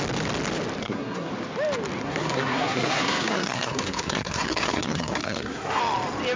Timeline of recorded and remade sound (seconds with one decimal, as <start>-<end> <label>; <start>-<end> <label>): 0.0-0.8 recorded; 0.8-1.3 remade; 1.3-2.0 recorded; 2.0-5.8 remade; 5.8-6.4 recorded